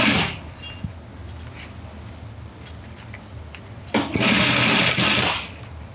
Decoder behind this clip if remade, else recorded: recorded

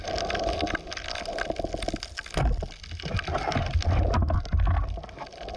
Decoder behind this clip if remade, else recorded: recorded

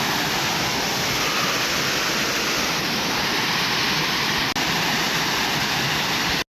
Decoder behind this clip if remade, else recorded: recorded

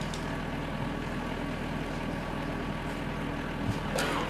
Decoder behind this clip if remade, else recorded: recorded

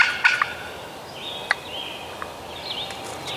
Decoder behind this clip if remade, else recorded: recorded